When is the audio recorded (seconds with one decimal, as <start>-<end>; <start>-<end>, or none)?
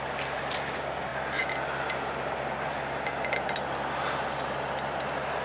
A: 0.0-5.4